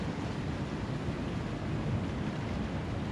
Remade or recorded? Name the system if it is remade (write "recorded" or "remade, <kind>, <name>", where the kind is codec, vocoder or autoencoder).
recorded